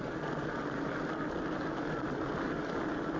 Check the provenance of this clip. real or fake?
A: real